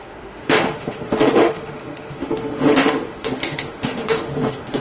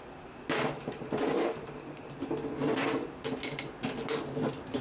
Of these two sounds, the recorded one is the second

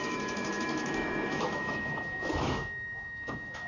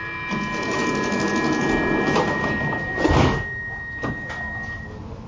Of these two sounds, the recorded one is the second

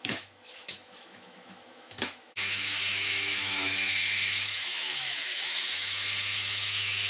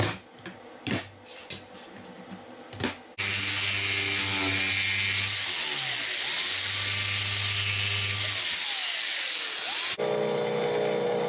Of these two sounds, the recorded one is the second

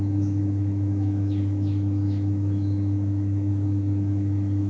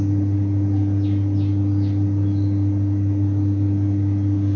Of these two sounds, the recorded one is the second